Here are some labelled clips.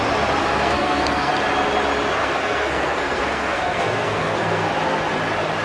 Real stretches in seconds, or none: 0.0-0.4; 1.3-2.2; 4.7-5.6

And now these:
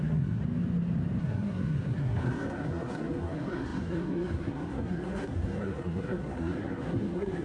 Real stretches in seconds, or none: 0.4-1.2

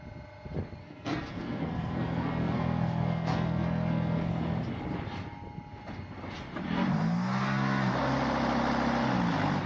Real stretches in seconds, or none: 0.0-0.8; 4.3-9.7

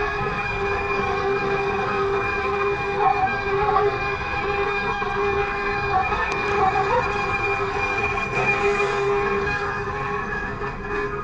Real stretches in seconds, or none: 6.5-7.4

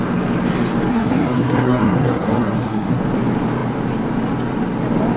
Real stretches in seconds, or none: 0.0-0.9; 3.0-5.2

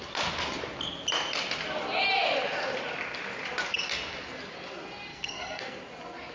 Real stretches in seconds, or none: 0.0-5.1; 5.8-6.3

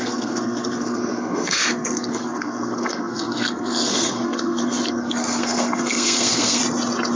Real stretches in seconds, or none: 6.6-7.2